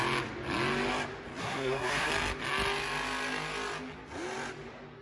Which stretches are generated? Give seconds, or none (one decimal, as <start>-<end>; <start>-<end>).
1.4-2.1